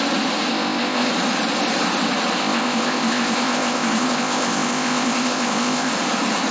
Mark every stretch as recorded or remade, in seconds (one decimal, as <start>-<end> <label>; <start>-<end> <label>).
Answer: 0.0-0.5 recorded; 0.5-1.1 remade; 1.1-2.4 recorded; 2.4-5.9 remade; 5.9-6.5 recorded